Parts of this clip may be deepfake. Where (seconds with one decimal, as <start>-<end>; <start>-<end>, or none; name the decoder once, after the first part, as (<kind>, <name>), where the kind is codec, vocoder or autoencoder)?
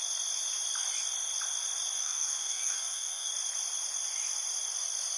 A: 2.0-3.3 (codec, DAC)